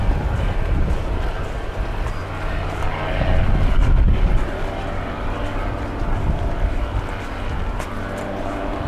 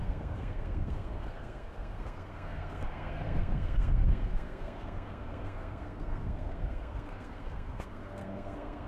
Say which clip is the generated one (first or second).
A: second